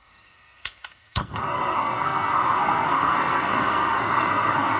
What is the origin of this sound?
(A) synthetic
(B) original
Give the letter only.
A